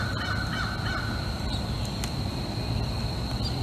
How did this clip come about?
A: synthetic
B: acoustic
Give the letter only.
B